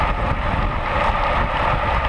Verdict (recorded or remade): recorded